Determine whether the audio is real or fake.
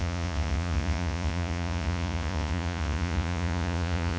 fake